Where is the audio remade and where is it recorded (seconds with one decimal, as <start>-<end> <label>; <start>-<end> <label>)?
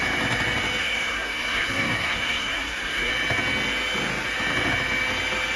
0.0-0.8 recorded; 0.8-3.1 remade; 3.1-5.6 recorded